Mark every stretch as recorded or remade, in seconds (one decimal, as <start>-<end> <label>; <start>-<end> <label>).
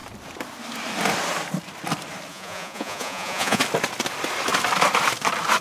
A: 0.0-2.3 recorded; 2.3-3.6 remade; 3.6-5.6 recorded